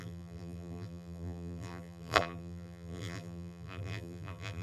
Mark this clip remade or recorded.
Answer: remade